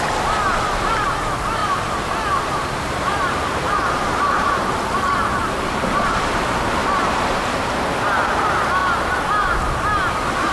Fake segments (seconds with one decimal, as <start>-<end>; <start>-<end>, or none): 1.6-3.7; 5.4-7.6